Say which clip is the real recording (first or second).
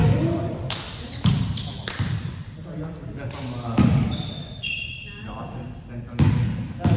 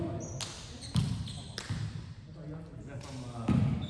second